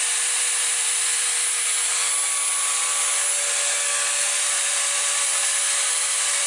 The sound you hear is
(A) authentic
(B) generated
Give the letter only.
A